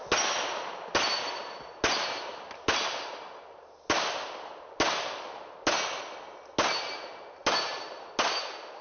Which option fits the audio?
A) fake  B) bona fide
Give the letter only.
B